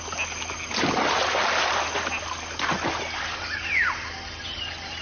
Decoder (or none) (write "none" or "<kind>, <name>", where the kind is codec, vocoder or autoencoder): none